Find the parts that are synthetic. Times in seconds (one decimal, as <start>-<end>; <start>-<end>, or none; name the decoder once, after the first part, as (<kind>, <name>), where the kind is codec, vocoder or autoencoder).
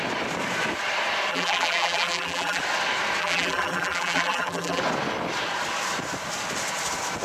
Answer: 1.3-2.6 (vocoder, BigVGAN v2); 3.2-4.8